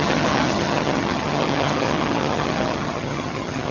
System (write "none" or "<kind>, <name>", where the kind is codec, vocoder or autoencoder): vocoder, HiFi-GAN